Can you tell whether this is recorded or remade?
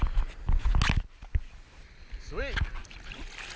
recorded